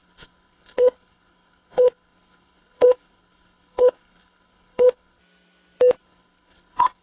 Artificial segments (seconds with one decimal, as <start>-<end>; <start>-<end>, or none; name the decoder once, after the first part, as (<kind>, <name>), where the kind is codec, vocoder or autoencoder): 0.0-5.2 (codec, HILCodec); 6.0-7.0